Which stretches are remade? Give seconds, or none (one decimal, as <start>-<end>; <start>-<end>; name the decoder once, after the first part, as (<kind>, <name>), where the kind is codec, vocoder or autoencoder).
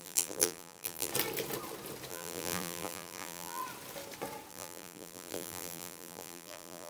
0.0-1.1 (vocoder, BigVGAN v2); 2.1-3.6; 4.5-6.9